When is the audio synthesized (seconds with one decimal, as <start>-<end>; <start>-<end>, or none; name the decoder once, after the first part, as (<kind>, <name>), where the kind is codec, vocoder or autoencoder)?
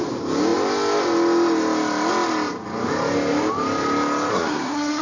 4.3-5.0 (codec, SNAC)